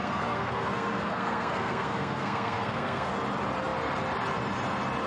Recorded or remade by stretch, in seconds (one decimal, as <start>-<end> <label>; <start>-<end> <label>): 0.0-3.1 remade; 3.1-5.1 recorded